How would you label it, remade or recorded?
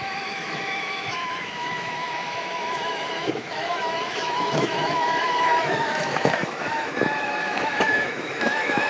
remade